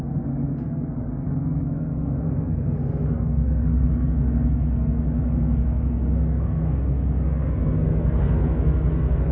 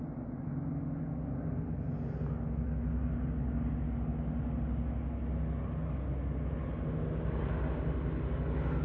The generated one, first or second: first